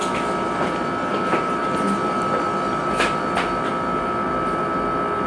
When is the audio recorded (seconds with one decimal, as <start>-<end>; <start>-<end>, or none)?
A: 0.0-5.3